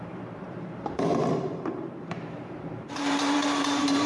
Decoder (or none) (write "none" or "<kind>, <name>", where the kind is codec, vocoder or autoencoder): vocoder, BigVGAN v2